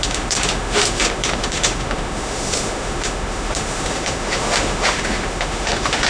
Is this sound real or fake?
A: fake